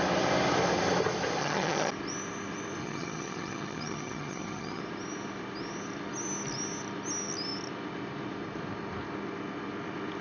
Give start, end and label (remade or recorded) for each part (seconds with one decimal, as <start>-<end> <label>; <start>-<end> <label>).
0.0-1.4 recorded; 1.4-1.9 remade; 1.9-2.8 recorded; 2.8-4.8 remade; 4.8-10.2 recorded